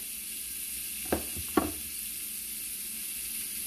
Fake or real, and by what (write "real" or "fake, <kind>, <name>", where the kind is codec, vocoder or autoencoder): real